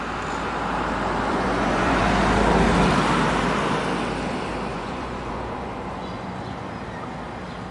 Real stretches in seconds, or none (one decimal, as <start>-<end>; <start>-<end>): 0.0-1.3; 2.0-4.7; 6.7-7.7